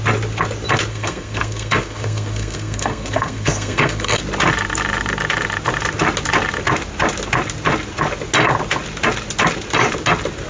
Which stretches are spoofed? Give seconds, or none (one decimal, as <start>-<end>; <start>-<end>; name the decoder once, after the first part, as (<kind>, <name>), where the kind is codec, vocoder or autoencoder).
0.9-4.2 (codec, SNAC)